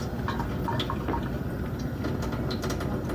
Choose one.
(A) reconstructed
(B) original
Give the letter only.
B